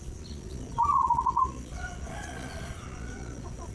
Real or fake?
fake